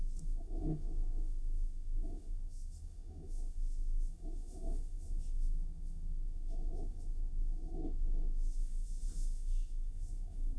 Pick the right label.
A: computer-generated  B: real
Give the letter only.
A